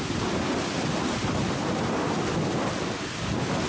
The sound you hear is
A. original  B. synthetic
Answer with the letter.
A